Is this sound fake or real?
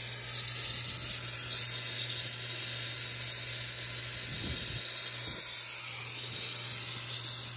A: real